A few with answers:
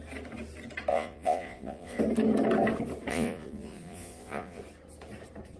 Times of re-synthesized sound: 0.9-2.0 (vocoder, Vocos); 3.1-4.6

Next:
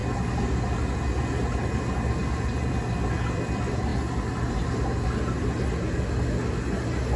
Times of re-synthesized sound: 2.2-2.7 (vocoder, BigVGAN v2)

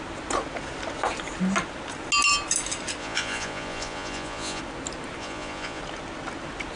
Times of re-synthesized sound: 3.0-4.6 (vocoder, Vocos); 5.2-5.8

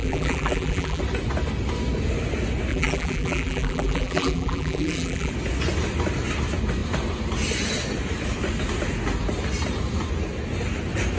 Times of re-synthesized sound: 0.0-1.0 (vocoder, BigVGAN v2); 2.7-5.3

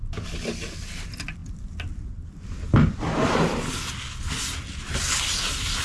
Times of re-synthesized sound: none